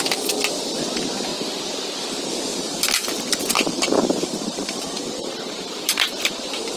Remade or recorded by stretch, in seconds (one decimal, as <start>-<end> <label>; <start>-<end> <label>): 0.0-2.5 recorded; 2.5-6.8 remade